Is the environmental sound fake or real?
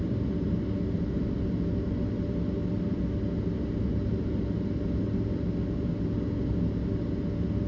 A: real